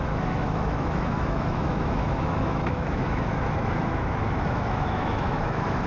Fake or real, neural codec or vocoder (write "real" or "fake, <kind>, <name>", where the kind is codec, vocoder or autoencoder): fake, autoencoder, DAC-VAE